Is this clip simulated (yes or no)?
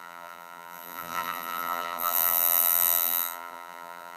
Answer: yes